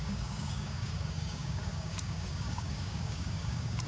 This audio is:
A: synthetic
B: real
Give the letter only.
A